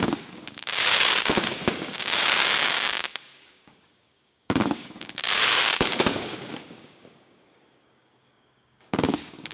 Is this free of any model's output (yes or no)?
no